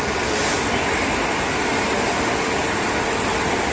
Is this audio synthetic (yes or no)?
no